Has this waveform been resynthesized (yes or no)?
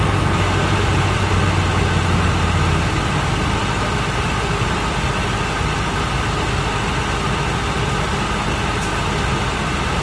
no